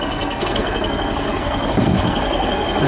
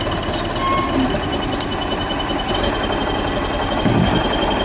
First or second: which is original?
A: second